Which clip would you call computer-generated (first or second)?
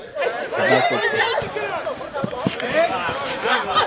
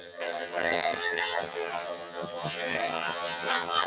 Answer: second